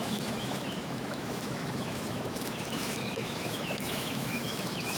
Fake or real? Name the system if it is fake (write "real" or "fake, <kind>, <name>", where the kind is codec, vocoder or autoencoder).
fake, autoencoder, DAC-VAE